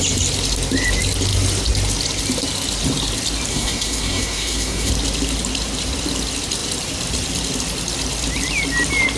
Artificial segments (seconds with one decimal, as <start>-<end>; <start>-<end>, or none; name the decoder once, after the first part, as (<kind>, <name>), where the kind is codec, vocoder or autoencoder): 3.5-4.9 (codec, SNAC)